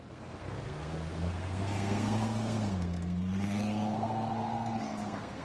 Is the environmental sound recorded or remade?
remade